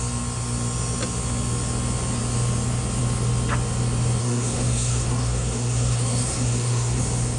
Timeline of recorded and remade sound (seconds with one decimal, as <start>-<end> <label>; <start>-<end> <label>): 0.0-4.2 recorded; 4.2-7.0 remade; 7.0-7.4 recorded